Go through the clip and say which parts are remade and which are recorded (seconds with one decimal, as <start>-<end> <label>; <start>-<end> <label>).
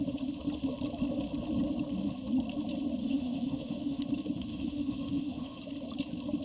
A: 0.0-3.0 recorded; 3.0-4.0 remade; 4.0-4.5 recorded; 4.5-5.6 remade; 5.6-6.4 recorded